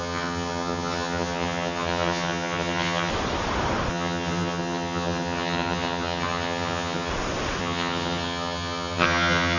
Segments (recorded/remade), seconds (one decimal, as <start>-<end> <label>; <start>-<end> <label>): 0.0-3.1 remade; 3.1-3.9 recorded; 3.9-7.1 remade; 7.1-7.6 recorded; 7.6-9.6 remade